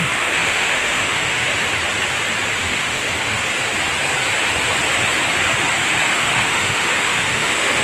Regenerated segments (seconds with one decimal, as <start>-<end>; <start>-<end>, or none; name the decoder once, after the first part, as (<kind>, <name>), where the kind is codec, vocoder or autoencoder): 0.0-1.5 (autoencoder, DAC-VAE); 2.6-3.4; 5.9-7.8